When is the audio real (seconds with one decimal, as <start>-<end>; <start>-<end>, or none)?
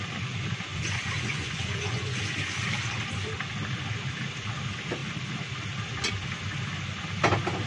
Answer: 0.0-0.7; 2.2-7.7